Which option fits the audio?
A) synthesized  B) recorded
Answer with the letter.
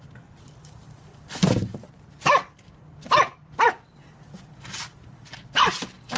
A